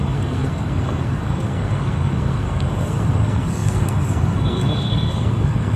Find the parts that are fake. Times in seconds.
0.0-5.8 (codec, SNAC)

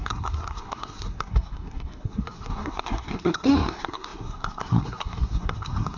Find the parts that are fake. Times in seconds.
0.0-6.0 (codec, SNAC)

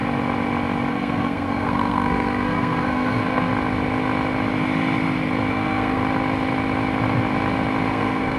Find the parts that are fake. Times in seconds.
0.9-3.5 (codec, SNAC); 5.5-6.0; 7.9-8.4

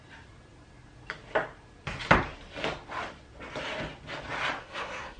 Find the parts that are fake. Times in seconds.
4.6-5.2 (codec, SNAC)

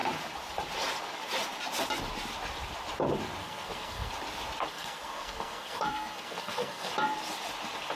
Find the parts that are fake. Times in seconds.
3.4-4.1 (codec, SNAC); 4.7-6.9

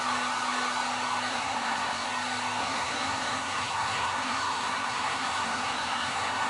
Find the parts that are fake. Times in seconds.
1.3-2.1 (codec, SNAC); 2.6-6.5